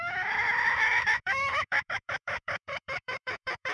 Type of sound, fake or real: fake